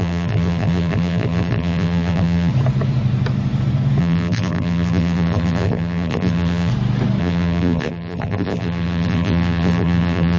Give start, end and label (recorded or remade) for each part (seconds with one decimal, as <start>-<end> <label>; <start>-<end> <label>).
0.0-2.5 remade; 2.5-4.0 recorded; 4.0-6.7 remade; 6.7-7.2 recorded; 7.2-10.4 remade